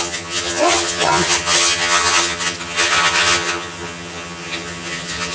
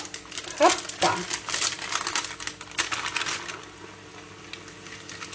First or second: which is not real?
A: first